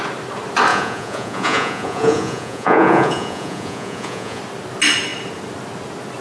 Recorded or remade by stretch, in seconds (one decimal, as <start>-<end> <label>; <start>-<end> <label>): 0.0-0.7 recorded; 0.7-4.4 remade; 4.4-6.2 recorded

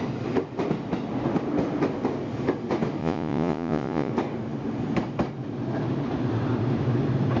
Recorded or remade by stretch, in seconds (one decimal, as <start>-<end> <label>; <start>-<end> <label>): 0.0-3.0 recorded; 3.0-4.1 remade; 4.1-7.4 recorded

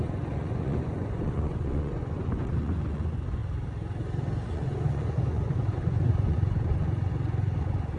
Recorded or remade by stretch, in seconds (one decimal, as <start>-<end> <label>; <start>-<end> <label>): 0.0-3.4 remade; 3.4-4.5 recorded; 4.5-8.0 remade

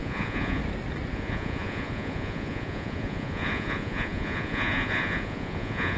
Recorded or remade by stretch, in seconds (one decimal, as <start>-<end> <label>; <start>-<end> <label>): 0.0-0.6 remade; 0.6-1.1 recorded; 1.1-6.0 remade

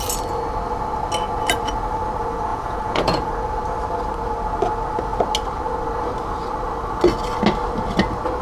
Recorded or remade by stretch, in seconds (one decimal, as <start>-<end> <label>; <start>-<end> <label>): 0.0-2.5 recorded; 2.5-3.3 remade; 3.3-8.4 recorded

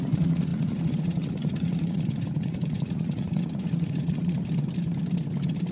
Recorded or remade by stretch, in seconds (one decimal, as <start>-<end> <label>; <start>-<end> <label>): 0.0-4.4 remade; 4.4-5.7 recorded

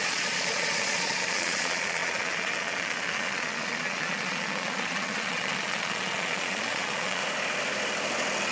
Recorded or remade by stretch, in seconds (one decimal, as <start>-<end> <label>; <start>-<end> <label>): 0.0-7.2 remade; 7.2-8.5 recorded